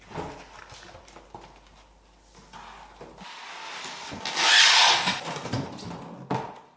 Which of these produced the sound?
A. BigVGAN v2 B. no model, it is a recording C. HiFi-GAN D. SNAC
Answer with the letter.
B